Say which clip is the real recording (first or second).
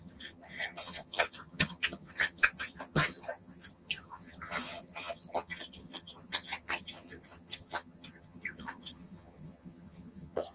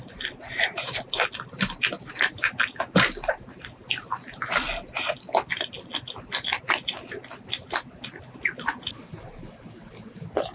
second